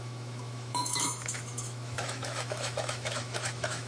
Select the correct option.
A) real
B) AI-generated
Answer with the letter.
B